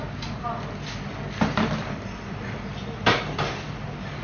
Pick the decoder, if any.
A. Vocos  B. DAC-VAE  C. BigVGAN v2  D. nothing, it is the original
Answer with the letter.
C